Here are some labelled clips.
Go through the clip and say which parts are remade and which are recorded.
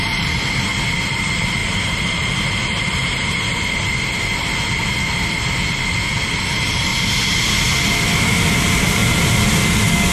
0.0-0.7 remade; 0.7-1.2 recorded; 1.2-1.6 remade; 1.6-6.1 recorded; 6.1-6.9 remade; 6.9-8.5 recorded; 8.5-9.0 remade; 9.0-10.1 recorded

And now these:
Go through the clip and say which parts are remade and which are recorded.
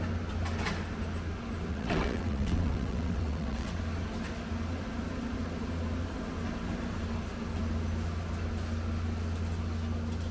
0.0-1.7 recorded; 1.7-3.8 remade; 3.8-10.3 recorded